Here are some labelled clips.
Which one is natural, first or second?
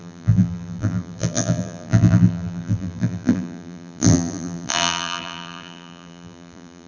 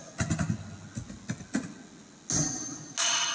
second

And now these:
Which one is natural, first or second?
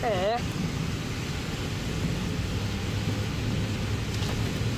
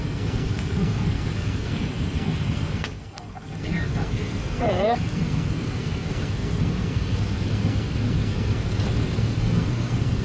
first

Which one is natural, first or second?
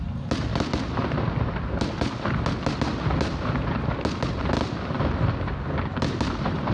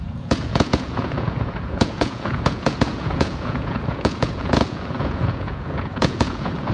first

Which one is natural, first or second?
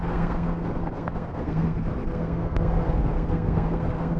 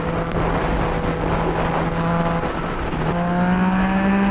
second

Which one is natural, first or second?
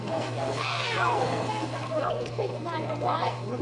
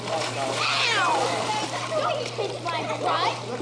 second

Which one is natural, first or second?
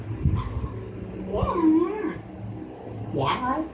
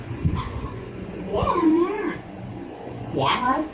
first